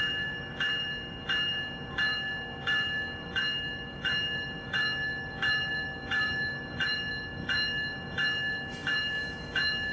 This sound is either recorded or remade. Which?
remade